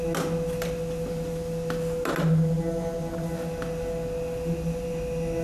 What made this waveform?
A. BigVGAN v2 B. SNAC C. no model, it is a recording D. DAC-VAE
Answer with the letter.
C